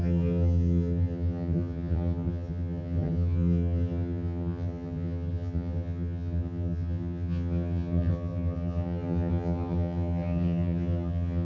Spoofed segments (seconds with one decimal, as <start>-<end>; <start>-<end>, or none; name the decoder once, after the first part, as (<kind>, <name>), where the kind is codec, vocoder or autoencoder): 0.0-11.4 (vocoder, HiFi-GAN)